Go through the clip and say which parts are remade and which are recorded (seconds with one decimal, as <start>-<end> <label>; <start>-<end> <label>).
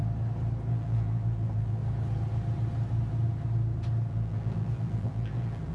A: 0.0-0.7 recorded; 0.7-1.8 remade; 1.8-4.1 recorded; 4.1-5.7 remade